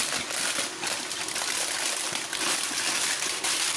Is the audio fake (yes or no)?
yes